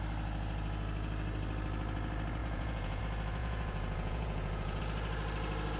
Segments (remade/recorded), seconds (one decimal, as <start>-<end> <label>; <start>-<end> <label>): 0.0-2.4 recorded; 2.4-3.0 remade; 3.0-3.4 recorded; 3.4-4.8 remade; 4.8-5.8 recorded